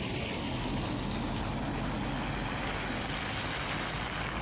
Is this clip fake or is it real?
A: real